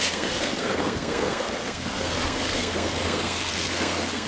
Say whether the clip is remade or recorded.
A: remade